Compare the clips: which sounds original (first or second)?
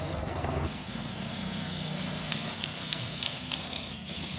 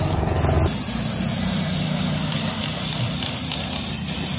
second